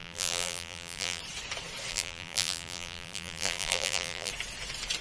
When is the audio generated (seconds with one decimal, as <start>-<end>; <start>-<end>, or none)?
0.0-1.2; 1.9-4.3